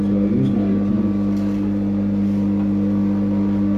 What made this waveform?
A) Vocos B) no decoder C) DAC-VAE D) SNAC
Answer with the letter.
B